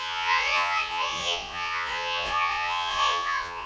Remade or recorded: remade